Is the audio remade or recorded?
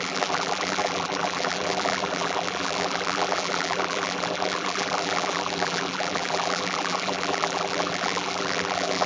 remade